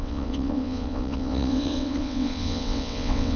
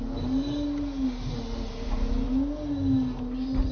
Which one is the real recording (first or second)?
second